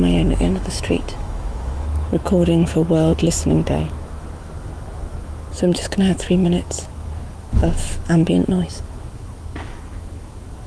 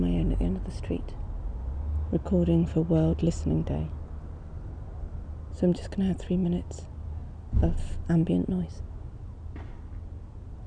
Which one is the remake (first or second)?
first